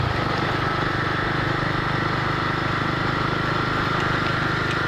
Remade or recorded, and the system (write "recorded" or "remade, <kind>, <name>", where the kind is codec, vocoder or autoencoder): recorded